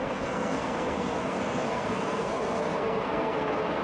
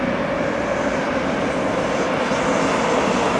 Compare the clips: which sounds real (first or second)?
second